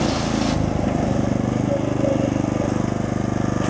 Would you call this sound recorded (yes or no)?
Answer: yes